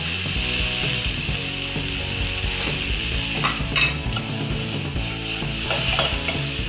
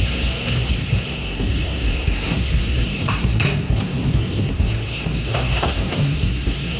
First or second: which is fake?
second